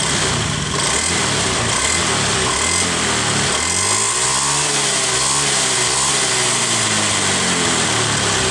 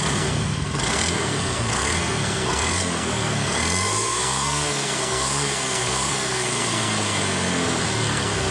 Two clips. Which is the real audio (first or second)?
first